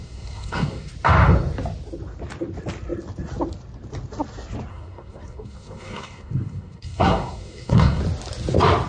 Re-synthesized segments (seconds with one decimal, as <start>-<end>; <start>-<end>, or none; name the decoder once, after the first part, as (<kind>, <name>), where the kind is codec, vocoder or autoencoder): 0.0-0.9 (codec, SNAC); 4.7-8.0